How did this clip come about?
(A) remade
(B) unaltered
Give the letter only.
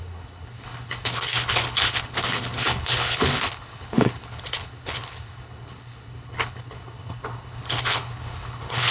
A